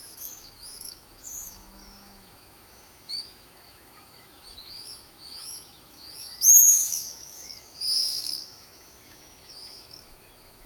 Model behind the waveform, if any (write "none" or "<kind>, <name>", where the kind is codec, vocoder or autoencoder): autoencoder, DAC-VAE